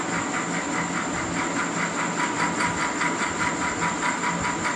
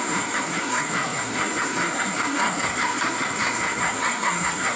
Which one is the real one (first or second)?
first